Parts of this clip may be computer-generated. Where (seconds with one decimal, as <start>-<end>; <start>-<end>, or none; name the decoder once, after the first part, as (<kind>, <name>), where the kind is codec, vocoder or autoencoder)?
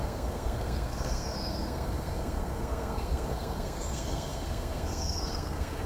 0.0-5.9 (codec, SNAC)